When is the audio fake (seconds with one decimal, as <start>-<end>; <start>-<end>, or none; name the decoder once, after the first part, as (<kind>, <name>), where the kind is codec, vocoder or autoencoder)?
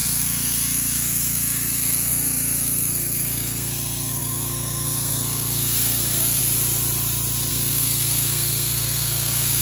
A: 0.0-6.4 (codec, SNAC); 7.5-9.6